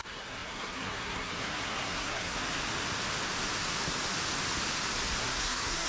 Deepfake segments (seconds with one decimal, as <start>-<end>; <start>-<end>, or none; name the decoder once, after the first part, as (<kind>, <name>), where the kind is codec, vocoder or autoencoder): 0.0-2.4 (codec, SNAC); 5.2-5.9